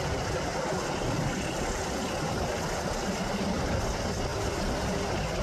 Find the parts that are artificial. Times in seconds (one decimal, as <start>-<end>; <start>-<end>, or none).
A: none